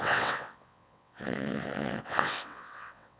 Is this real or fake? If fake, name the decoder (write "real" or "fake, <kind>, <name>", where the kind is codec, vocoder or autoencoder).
fake, vocoder, WaveNeXt